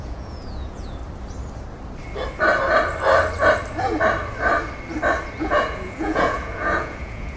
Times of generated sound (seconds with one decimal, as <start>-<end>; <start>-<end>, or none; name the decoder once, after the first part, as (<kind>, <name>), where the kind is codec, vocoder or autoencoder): 0.0-1.0 (vocoder, Vocos); 5.4-7.4